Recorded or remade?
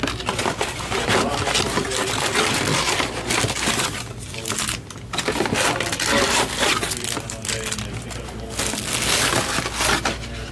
recorded